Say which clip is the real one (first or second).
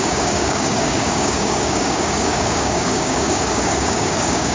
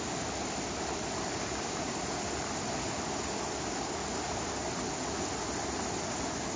second